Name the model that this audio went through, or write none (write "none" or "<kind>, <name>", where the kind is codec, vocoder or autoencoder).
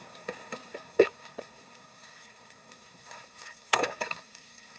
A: codec, SNAC